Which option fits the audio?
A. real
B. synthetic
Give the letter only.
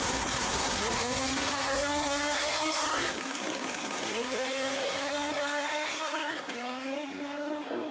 B